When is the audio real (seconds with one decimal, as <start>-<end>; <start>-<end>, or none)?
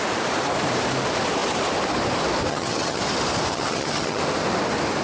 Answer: 0.0-2.5; 3.0-3.5; 4.2-5.0